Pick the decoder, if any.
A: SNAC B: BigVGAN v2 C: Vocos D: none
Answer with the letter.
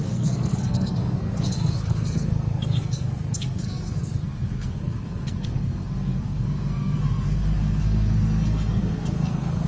A